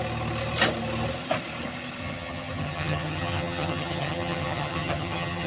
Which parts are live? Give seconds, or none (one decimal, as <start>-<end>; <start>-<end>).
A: 0.0-2.0

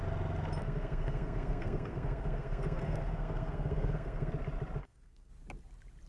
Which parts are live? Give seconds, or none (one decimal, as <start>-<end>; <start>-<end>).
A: 0.0-0.6; 4.3-4.8; 5.3-6.1

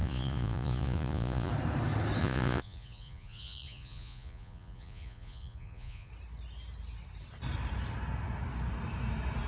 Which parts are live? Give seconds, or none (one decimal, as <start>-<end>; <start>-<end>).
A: 1.5-2.2; 6.1-9.5

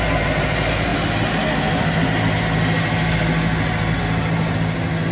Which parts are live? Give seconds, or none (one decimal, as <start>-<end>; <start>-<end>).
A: 0.0-5.1

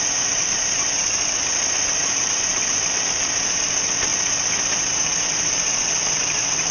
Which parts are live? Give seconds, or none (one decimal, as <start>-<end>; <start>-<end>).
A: 4.1-5.1

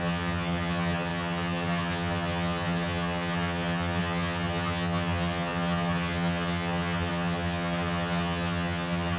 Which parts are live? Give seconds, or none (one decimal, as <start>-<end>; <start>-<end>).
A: none

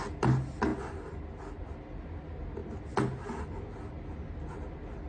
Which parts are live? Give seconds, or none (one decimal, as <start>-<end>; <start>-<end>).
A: 0.0-5.1